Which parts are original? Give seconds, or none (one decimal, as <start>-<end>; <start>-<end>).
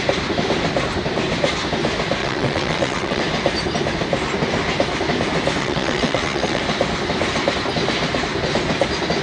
0.0-2.2; 3.2-5.6; 6.6-9.2